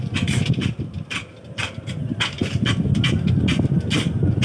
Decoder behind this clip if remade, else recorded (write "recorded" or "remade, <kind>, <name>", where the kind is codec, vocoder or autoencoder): recorded